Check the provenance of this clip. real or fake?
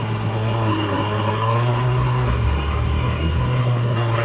fake